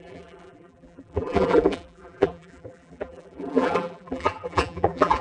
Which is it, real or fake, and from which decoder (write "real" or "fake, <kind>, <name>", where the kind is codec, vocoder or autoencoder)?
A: fake, vocoder, BigVGAN v2